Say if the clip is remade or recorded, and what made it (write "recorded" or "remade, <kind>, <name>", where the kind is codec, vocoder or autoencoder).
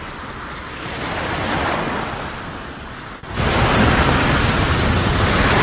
recorded